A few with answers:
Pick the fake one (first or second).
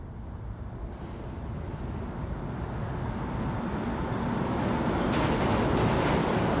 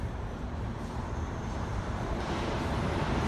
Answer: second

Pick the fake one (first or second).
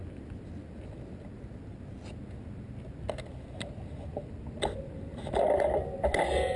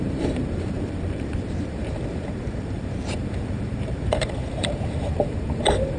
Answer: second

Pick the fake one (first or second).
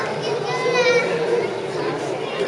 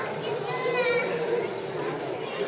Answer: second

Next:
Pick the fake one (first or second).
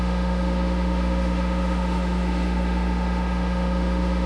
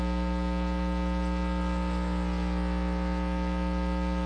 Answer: first